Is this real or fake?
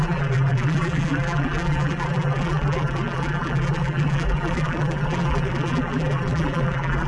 fake